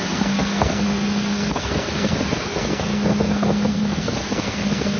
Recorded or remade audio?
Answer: remade